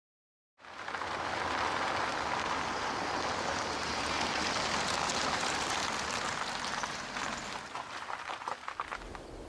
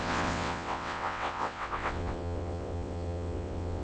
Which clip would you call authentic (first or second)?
first